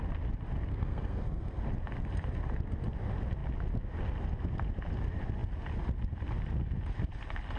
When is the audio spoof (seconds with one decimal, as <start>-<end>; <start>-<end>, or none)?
0.7-1.6